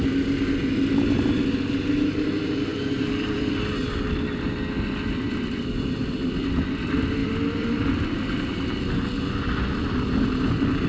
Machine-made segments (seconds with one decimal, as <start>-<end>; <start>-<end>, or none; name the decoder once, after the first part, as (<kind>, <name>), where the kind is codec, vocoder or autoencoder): 2.7-3.5 (vocoder, BigVGAN v2); 7.2-8.2